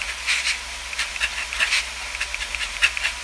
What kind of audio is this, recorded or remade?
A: recorded